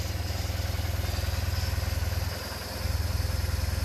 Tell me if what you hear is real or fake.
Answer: real